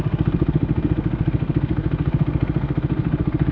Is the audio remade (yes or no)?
yes